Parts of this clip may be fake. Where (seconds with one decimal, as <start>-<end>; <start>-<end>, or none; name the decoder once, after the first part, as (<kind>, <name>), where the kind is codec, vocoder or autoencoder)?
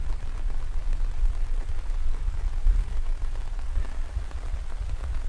none